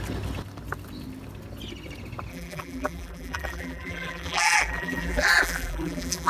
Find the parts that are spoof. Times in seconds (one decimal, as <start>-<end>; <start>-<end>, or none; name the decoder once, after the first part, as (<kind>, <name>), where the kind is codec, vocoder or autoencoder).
2.3-6.3 (vocoder, BigVGAN v2)